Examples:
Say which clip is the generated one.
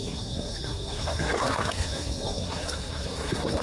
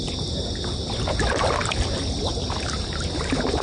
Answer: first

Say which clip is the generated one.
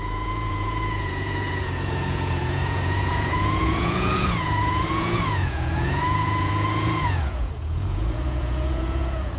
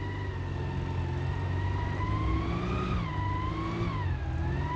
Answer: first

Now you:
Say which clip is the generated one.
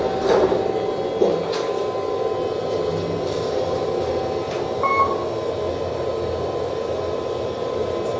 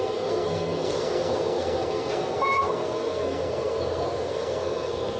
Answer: second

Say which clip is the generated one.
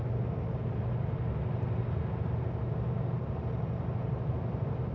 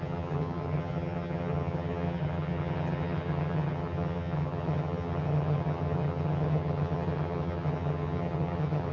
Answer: second